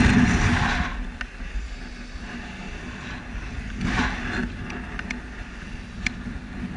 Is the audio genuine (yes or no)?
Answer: yes